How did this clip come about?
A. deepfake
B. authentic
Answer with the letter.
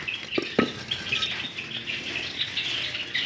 B